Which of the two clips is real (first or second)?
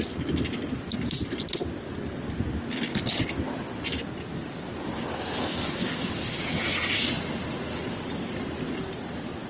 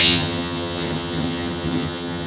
first